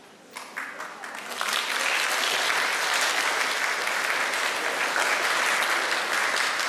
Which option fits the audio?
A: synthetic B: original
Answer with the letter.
B